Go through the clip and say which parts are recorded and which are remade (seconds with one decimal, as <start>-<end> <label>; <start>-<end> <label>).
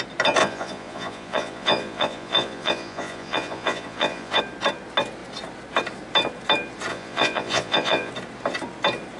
0.0-0.4 recorded; 0.4-4.4 remade; 4.4-6.9 recorded; 6.9-8.1 remade; 8.1-9.2 recorded